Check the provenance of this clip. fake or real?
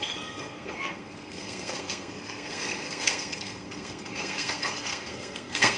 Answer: fake